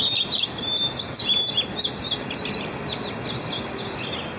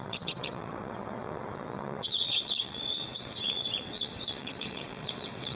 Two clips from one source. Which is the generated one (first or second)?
second